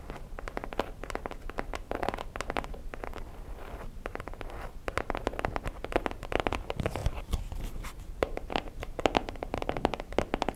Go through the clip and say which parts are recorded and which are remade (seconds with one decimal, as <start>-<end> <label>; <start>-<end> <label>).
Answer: 0.0-2.8 recorded; 2.8-3.3 remade; 3.3-7.0 recorded; 7.0-9.7 remade; 9.7-10.6 recorded